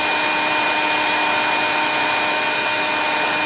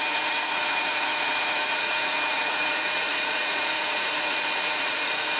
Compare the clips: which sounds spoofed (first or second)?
second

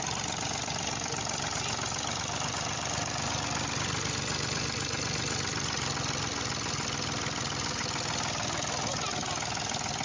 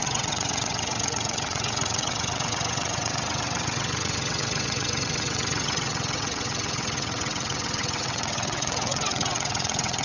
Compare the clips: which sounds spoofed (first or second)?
second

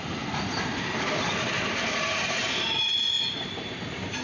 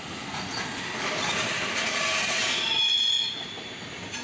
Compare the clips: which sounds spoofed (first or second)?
first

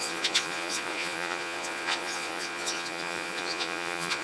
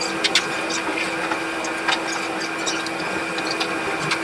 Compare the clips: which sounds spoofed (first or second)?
first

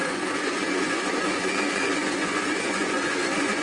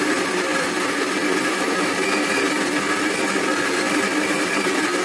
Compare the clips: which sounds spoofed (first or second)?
first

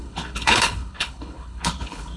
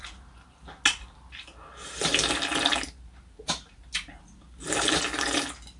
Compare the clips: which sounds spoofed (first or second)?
first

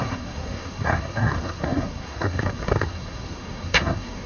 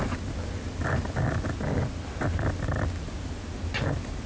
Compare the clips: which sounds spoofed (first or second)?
first